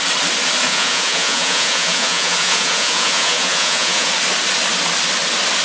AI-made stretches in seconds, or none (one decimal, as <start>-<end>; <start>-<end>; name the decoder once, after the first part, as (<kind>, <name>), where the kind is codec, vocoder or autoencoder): 0.7-4.1 (vocoder, Vocos)